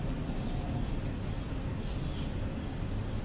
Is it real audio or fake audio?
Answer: real